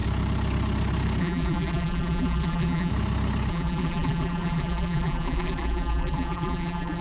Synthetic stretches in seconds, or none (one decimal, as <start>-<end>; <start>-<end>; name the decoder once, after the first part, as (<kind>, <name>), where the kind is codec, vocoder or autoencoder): 1.2-2.9 (vocoder, BigVGAN v2); 3.5-7.0